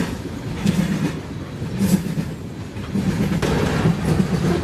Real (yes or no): yes